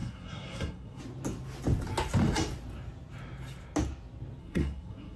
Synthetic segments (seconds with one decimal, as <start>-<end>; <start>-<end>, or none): 0.0-1.0; 4.4-5.2